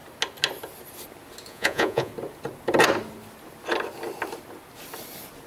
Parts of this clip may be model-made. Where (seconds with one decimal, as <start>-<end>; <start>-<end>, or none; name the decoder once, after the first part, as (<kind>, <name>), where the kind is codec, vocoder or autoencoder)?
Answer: 1.5-2.1 (vocoder, Vocos)